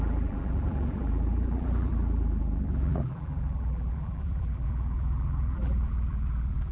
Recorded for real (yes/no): no